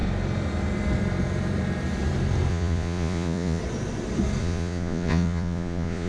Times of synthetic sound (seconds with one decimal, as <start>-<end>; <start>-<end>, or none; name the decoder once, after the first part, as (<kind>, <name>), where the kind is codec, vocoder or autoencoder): 2.5-3.6 (vocoder, Vocos); 4.4-6.1